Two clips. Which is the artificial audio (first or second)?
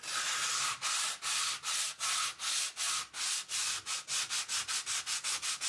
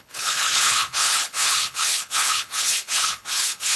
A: second